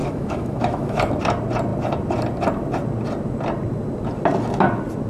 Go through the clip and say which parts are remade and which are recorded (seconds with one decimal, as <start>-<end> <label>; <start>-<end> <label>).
0.0-1.1 remade; 1.1-5.1 recorded